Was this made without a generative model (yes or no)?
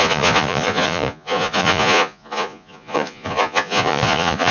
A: no